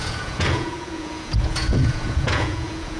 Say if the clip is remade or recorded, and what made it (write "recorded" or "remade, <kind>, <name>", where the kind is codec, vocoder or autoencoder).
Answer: remade, vocoder, Vocos